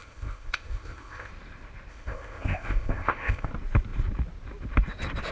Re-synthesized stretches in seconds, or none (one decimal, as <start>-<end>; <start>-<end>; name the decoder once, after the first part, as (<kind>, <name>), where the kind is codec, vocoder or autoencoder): 0.0-1.3 (codec, ZipCodec); 1.9-3.5